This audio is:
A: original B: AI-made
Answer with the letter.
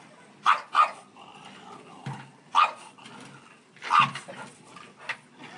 A